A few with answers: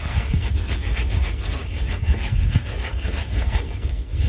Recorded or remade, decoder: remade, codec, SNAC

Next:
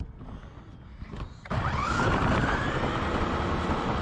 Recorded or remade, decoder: recorded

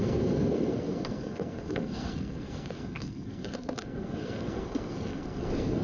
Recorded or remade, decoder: remade, codec, SNAC